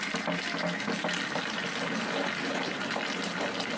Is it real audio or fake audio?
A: real